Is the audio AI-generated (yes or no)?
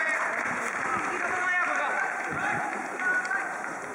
yes